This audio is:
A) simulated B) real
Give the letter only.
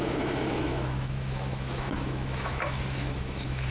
A